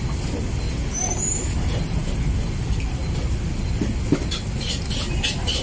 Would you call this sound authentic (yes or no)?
yes